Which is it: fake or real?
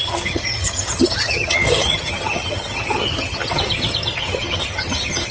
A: fake